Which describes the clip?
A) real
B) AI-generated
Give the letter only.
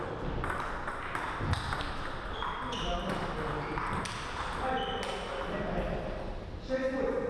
A